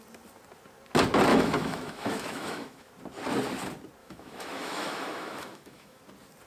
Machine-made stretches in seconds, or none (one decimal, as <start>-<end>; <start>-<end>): 1.3-2.9; 4.0-6.0